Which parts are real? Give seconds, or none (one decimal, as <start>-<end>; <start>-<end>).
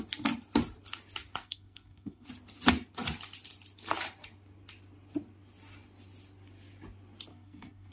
0.0-1.4; 2.3-7.3